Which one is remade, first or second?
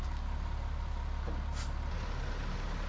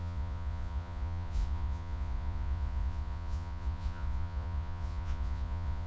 second